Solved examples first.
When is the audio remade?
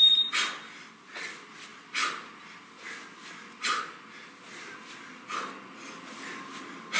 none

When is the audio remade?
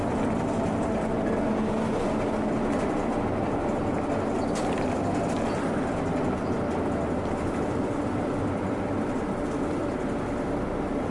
none